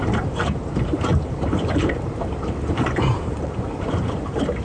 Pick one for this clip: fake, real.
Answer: fake